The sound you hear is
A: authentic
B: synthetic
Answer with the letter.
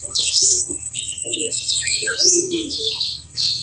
B